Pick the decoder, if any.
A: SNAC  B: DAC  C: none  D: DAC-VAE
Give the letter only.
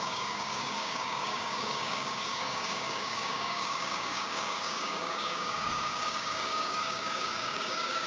B